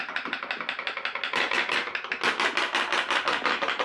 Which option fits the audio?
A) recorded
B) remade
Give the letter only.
A